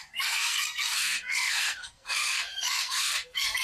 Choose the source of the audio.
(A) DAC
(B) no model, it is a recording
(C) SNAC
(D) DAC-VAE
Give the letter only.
C